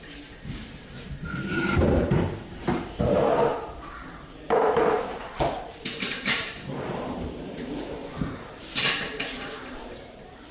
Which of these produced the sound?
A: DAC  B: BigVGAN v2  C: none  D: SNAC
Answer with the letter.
B